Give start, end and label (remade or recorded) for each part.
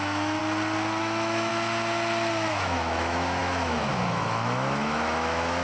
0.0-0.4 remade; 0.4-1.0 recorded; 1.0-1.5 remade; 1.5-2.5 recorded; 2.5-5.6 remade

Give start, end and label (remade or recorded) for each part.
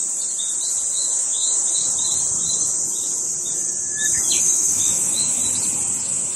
0.0-0.9 recorded; 0.9-1.8 remade; 1.8-4.4 recorded; 4.4-5.4 remade; 5.4-6.0 recorded; 6.0-6.4 remade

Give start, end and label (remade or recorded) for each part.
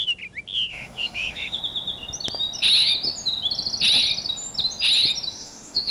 0.0-0.7 recorded; 0.7-1.6 remade; 1.6-5.3 recorded; 5.3-5.9 remade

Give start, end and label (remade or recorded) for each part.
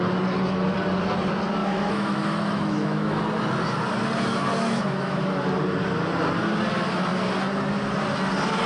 0.0-1.6 recorded; 1.6-3.2 remade; 3.2-4.5 recorded; 4.5-5.2 remade; 5.2-8.7 recorded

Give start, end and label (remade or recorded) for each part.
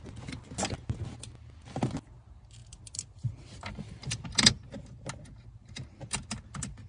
0.0-6.9 recorded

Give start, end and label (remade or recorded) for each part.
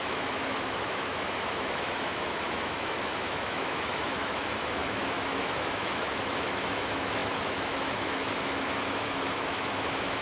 0.0-10.2 remade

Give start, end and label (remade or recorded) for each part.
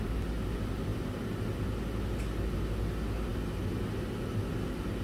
0.0-5.0 recorded